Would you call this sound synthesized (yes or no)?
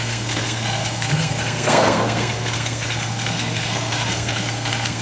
yes